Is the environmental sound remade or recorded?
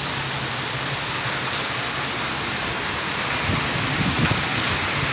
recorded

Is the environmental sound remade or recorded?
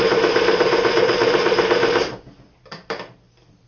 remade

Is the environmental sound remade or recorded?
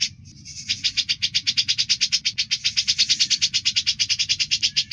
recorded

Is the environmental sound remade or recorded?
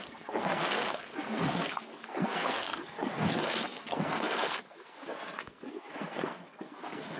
remade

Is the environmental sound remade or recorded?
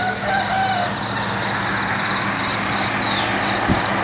recorded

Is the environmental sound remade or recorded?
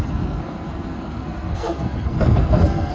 remade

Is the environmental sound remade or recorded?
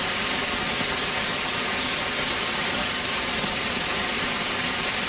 recorded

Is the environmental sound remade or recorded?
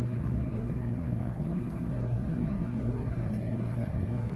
remade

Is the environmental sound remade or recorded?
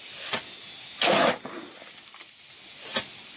recorded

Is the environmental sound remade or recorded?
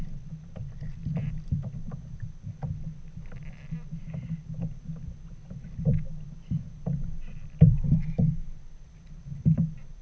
recorded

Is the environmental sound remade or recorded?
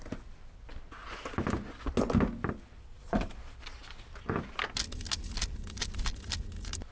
recorded